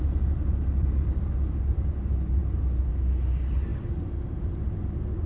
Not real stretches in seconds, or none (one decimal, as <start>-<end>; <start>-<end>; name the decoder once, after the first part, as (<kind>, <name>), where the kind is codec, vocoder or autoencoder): none